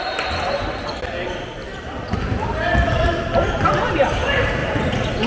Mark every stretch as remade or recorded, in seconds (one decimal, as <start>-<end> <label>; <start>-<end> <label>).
0.0-1.7 recorded; 1.7-3.9 remade; 3.9-4.6 recorded; 4.6-5.3 remade